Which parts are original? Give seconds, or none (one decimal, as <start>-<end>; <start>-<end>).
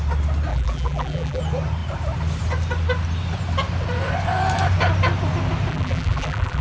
0.0-0.5; 1.4-5.7